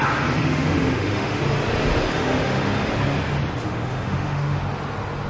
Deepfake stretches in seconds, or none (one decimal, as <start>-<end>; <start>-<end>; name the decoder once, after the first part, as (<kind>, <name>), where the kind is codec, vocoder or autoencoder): 0.4-1.4 (autoencoder, DAC-VAE); 2.1-2.9; 3.6-4.6